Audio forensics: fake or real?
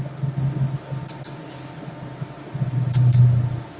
real